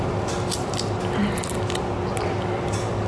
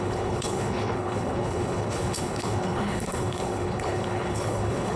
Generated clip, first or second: second